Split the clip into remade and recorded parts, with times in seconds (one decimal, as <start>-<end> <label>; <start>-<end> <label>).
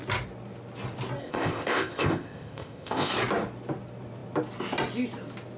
0.0-1.2 recorded; 1.2-3.1 remade; 3.1-5.6 recorded